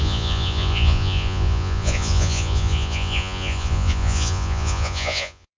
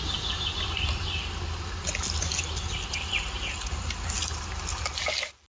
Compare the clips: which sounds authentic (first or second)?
second